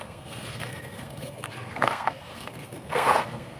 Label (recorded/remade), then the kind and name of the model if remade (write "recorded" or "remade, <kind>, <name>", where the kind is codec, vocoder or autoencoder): remade, codec, SNAC